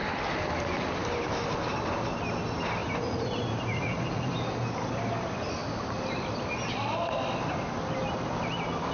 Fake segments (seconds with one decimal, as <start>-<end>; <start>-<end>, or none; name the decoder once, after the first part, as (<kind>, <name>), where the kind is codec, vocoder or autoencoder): 2.8-4.3 (vocoder, Vocos)